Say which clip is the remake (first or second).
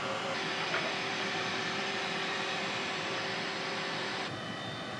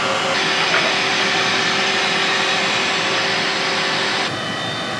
first